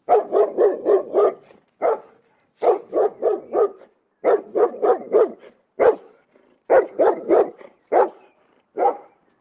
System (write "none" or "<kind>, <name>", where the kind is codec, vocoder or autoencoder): vocoder, BigVGAN v2